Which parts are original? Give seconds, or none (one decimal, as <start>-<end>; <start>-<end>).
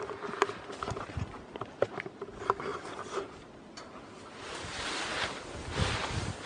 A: 0.0-6.5